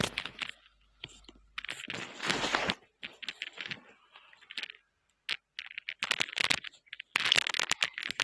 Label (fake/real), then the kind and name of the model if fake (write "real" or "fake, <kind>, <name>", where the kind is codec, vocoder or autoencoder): real